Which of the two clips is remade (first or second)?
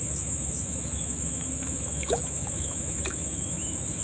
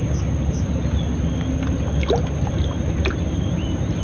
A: first